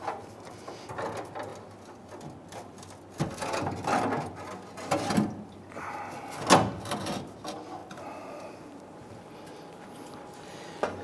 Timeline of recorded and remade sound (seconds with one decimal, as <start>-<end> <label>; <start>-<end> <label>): 0.0-11.0 recorded